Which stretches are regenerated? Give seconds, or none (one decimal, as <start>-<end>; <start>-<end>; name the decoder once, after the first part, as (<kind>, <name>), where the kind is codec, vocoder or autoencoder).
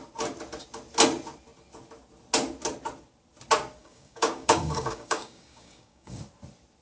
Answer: 3.8-6.2 (codec, DAC)